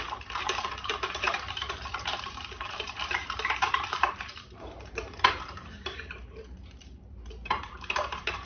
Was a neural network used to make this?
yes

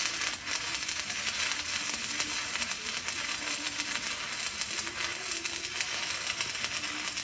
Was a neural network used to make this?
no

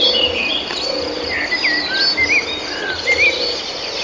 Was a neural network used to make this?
no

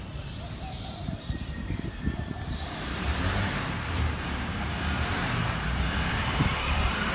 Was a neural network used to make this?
yes